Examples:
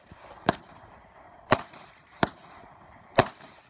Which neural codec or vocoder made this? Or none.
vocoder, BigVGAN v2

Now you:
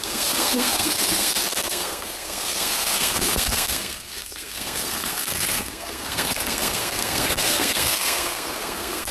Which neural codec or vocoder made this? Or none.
codec, SNAC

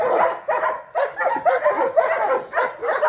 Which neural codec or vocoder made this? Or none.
none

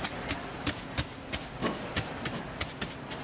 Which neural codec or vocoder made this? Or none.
none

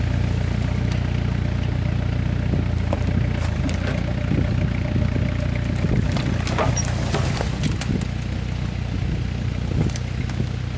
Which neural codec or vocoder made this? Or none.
none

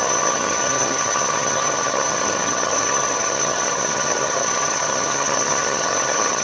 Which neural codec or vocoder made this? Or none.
vocoder, HiFi-GAN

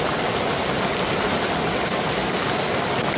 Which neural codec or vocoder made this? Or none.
none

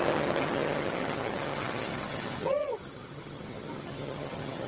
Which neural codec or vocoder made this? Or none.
vocoder, HiFi-GAN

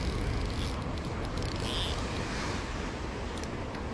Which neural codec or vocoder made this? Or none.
none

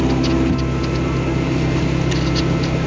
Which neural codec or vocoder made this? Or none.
none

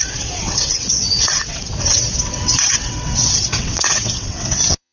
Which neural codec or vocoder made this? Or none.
vocoder, WaveNeXt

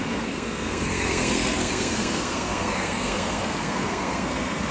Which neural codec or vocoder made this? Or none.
codec, SNAC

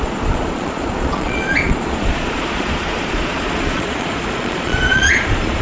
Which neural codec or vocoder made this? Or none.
vocoder, Vocos